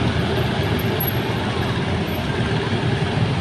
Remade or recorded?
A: recorded